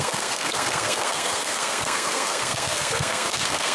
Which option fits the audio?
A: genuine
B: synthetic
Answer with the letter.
B